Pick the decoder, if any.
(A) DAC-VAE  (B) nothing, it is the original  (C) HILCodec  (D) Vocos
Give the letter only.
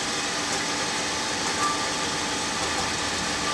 B